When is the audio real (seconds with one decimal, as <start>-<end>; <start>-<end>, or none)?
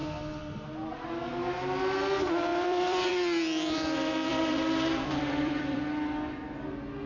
0.0-2.5; 3.1-4.3; 5.8-7.1